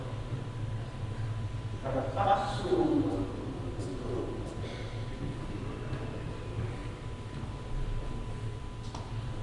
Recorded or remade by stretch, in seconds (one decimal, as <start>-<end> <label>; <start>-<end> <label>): 0.0-2.4 recorded; 2.4-3.1 remade; 3.1-9.4 recorded